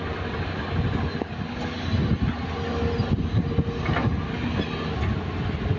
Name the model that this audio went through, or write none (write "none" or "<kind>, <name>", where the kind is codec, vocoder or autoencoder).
none